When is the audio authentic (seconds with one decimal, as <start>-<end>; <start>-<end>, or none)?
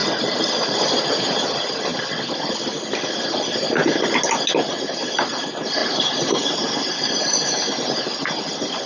0.0-8.9